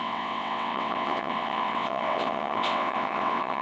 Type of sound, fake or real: fake